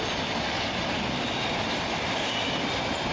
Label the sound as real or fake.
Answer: real